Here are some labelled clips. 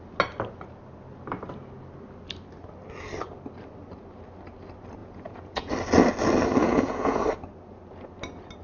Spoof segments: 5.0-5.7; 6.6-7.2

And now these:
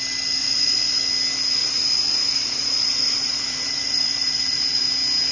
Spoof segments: 0.4-1.0; 1.6-4.8